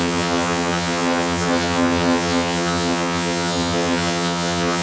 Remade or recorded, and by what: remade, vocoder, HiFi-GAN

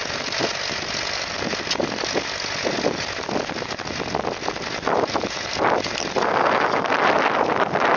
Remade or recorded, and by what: recorded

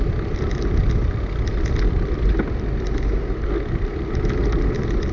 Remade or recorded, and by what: recorded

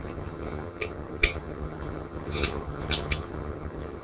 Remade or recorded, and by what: remade, vocoder, HiFi-GAN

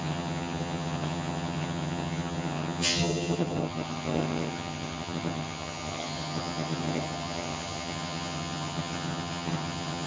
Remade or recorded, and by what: remade, vocoder, HiFi-GAN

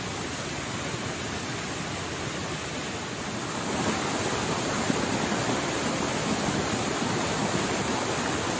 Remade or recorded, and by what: recorded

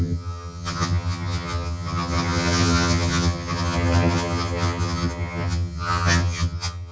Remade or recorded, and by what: remade, vocoder, HiFi-GAN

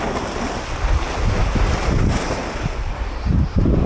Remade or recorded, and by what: recorded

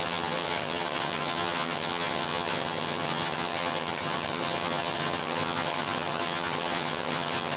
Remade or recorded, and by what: remade, vocoder, HiFi-GAN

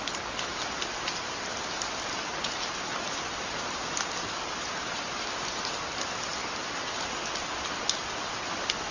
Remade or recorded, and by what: recorded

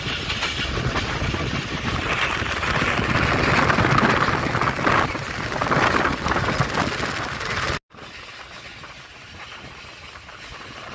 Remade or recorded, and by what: recorded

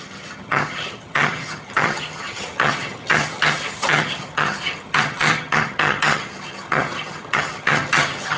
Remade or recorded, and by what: remade, vocoder, HiFi-GAN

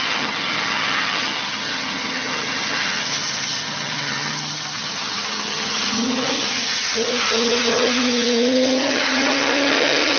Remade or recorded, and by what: remade, vocoder, HiFi-GAN